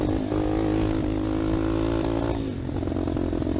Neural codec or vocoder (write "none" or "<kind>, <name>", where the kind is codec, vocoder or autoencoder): none